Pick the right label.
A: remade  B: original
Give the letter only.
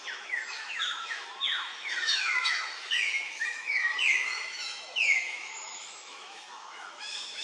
A